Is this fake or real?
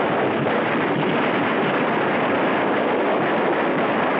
real